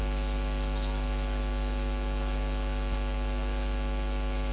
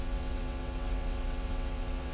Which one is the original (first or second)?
first